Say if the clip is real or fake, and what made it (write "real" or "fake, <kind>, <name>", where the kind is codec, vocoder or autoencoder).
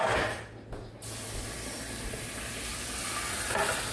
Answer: real